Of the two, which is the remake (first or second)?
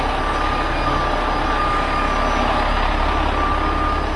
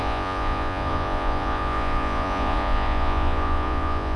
second